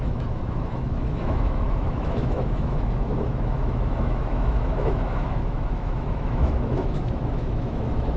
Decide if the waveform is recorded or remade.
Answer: remade